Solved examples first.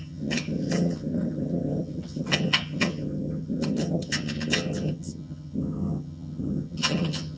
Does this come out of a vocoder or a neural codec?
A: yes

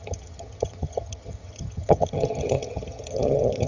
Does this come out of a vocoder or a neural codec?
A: yes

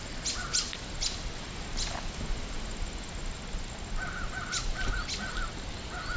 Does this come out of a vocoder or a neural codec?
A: no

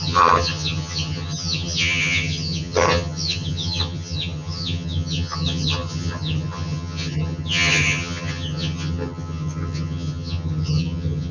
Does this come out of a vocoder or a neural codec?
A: yes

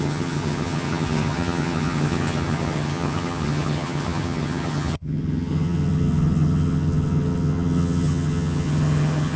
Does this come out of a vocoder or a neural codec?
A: yes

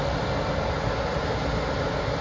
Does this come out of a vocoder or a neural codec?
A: no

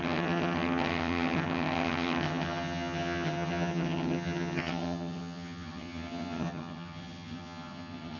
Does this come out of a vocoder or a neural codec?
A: yes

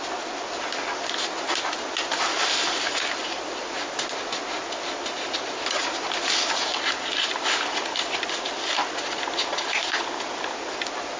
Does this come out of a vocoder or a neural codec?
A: no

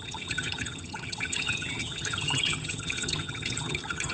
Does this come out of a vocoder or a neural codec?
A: yes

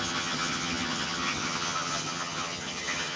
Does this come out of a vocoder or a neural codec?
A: yes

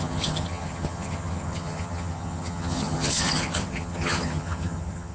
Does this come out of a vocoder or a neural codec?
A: yes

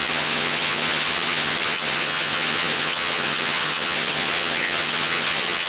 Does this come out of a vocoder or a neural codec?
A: yes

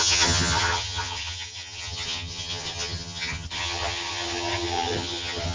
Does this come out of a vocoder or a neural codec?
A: yes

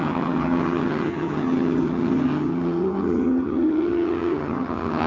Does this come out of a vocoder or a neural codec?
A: yes